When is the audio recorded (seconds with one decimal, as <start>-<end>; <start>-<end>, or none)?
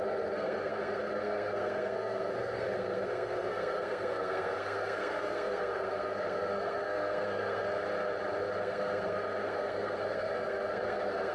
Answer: 7.7-8.6